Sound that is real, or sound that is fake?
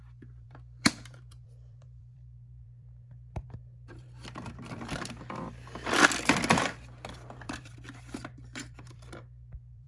fake